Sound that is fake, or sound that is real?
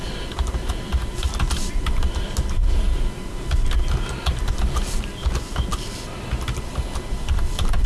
real